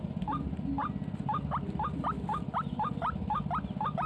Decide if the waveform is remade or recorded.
recorded